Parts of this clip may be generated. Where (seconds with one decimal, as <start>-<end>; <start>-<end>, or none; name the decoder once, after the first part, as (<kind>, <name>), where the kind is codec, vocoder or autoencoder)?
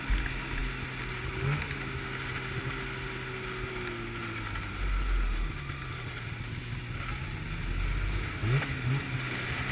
none